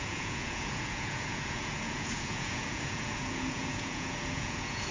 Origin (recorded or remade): remade